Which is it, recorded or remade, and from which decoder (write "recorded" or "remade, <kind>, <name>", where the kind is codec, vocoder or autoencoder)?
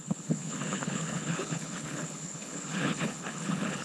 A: remade, codec, HILCodec